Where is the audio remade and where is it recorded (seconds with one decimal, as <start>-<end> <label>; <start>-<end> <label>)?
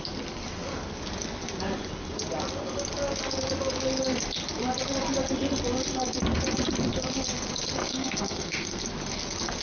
0.0-7.8 recorded; 7.8-8.8 remade; 8.8-9.6 recorded